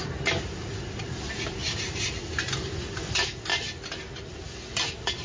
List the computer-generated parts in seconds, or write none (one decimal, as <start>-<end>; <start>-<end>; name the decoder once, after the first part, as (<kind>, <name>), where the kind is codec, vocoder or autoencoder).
1.6-2.8 (vocoder, BigVGAN v2)